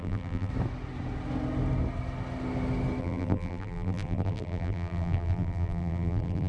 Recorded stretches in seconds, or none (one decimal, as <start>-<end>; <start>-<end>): 0.5-3.0